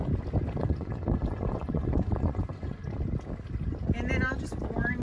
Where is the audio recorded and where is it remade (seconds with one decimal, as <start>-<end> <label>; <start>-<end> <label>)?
0.0-0.6 recorded; 0.6-2.9 remade; 2.9-5.0 recorded